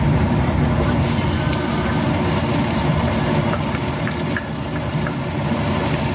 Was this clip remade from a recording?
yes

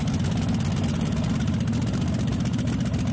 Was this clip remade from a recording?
no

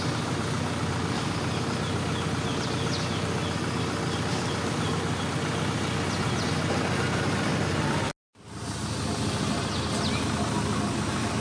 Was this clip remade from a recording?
no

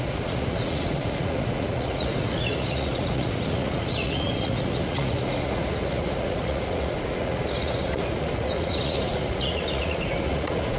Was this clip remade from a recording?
yes